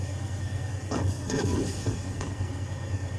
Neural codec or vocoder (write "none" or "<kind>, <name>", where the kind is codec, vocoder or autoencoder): codec, SNAC